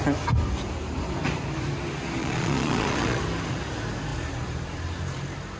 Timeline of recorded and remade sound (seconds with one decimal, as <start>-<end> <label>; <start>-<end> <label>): 0.0-2.2 recorded; 2.2-3.2 remade; 3.2-5.6 recorded